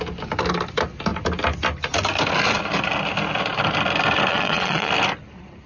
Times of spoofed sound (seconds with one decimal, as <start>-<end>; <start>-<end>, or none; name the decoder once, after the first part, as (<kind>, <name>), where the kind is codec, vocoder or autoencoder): 4.3-4.9 (vocoder, Vocos)